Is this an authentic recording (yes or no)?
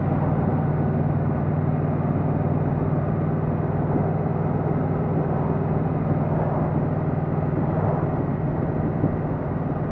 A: yes